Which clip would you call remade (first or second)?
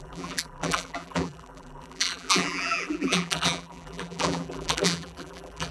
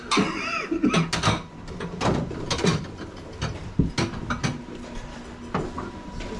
first